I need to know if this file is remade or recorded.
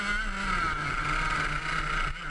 recorded